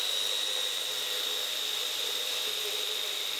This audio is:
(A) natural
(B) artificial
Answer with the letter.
A